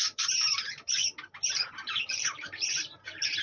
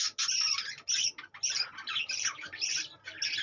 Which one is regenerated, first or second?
first